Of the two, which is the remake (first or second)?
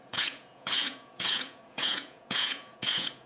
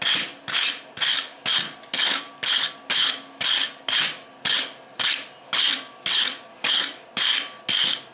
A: first